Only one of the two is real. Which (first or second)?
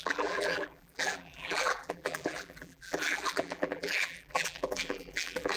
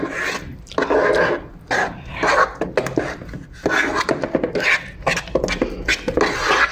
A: second